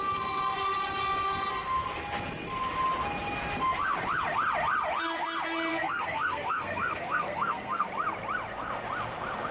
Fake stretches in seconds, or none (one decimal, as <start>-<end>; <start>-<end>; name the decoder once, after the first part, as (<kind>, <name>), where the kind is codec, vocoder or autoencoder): 5.7-7.9 (codec, SNAC)